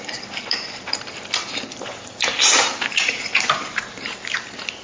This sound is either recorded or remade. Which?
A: remade